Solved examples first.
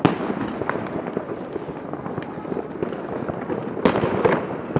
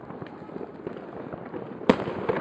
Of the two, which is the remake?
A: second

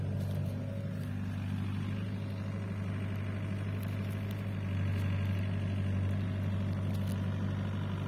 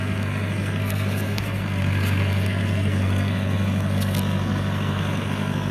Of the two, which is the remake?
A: second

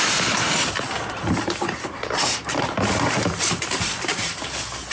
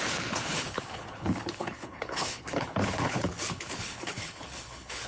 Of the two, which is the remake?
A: second